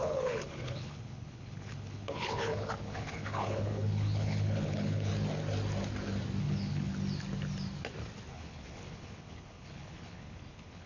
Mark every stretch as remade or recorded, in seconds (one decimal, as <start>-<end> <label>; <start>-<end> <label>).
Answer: 0.0-5.1 remade; 5.1-6.4 recorded; 6.4-6.9 remade; 6.9-8.3 recorded; 8.3-10.9 remade